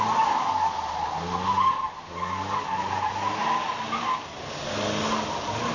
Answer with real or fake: real